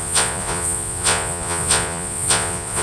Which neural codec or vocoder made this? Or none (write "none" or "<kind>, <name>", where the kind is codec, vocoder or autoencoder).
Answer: vocoder, Vocos